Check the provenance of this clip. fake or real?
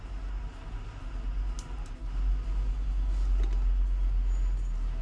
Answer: real